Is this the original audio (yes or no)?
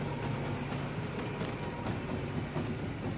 yes